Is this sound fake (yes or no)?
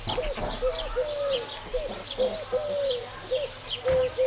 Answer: no